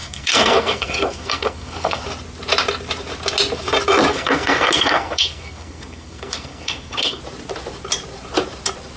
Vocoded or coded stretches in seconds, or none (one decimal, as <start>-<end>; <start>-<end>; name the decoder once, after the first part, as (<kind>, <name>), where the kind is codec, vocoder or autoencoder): 0.0-2.0 (codec, SNAC); 4.1-7.2